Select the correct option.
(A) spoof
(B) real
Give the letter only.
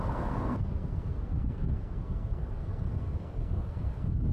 A